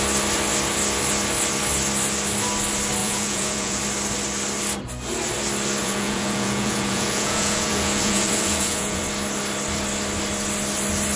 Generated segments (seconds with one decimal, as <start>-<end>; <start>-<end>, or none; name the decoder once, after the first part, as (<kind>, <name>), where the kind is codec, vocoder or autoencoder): 3.0-3.8 (vocoder, Vocos); 5.8-9.0